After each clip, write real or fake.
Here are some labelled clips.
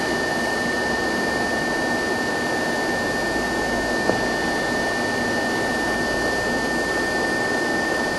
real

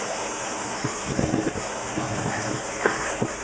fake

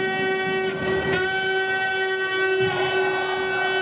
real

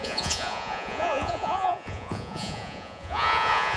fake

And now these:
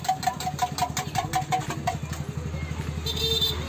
real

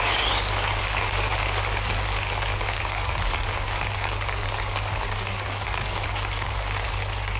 fake